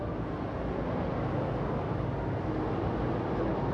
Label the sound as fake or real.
real